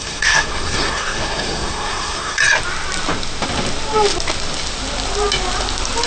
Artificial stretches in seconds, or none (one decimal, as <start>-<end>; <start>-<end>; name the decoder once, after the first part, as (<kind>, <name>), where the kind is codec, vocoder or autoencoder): 0.0-2.4 (codec, SNAC)